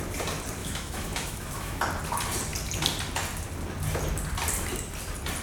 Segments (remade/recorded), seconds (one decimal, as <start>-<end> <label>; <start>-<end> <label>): 0.0-0.6 recorded; 0.6-1.8 remade; 1.8-5.4 recorded